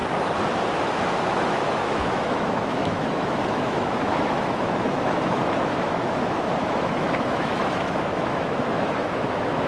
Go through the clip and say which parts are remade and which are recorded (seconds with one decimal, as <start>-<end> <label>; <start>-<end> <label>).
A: 0.0-1.2 recorded; 1.2-9.7 remade